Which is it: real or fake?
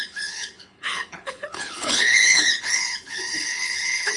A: fake